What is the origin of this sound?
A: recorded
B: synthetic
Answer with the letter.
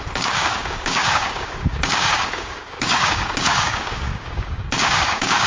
B